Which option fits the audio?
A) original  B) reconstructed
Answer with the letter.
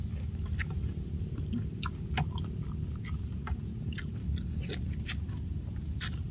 A